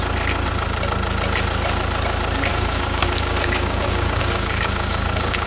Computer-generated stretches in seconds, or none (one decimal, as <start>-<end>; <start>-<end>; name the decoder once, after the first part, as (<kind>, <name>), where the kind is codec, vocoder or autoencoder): 2.5-5.5 (codec, DAC)